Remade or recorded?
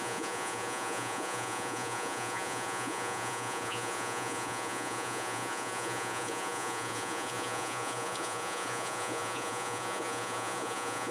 remade